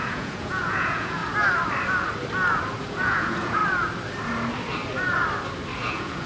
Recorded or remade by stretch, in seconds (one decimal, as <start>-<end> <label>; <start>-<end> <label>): 0.0-1.2 remade; 1.2-2.8 recorded; 2.8-3.6 remade; 3.6-5.8 recorded; 5.8-6.3 remade